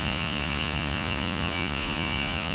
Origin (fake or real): fake